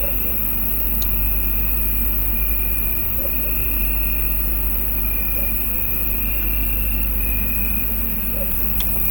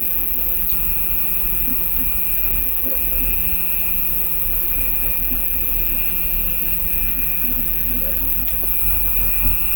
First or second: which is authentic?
first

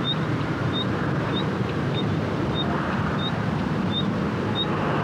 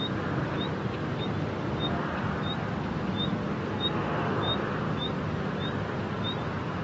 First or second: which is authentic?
second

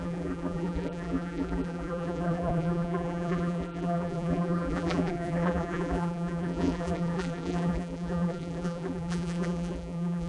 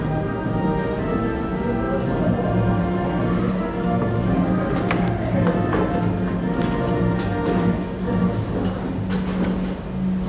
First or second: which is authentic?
second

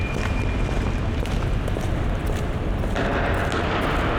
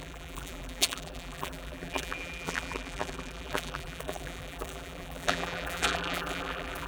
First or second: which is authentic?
first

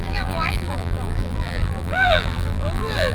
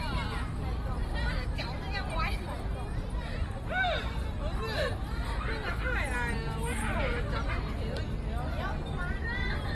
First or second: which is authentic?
second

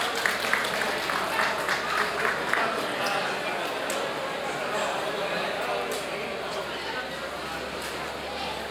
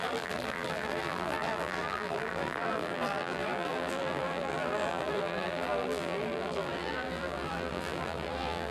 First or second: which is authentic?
first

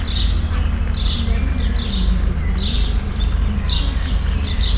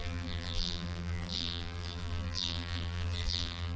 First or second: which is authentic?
first